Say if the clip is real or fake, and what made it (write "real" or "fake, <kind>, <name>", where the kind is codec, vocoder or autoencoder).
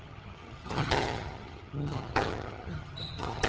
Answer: fake, vocoder, HiFi-GAN